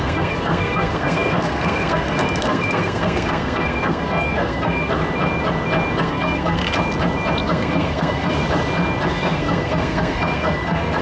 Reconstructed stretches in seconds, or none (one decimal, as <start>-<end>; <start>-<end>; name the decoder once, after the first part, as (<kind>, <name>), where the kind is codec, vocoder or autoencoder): 0.0-5.0 (codec, SNAC); 6.0-6.6; 7.4-8.4; 9.1-11.0